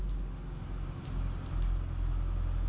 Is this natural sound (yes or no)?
yes